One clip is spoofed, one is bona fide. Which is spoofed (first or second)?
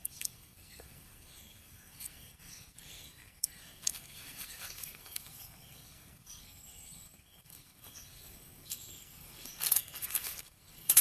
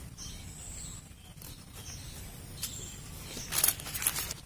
first